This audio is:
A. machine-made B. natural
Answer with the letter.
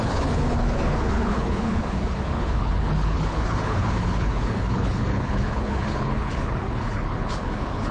A